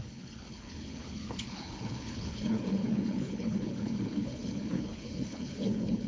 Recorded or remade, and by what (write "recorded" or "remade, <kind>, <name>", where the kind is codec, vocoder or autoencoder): remade, codec, HILCodec